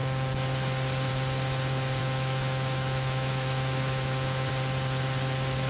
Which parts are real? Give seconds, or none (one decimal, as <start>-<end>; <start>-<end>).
0.0-2.0; 4.5-5.7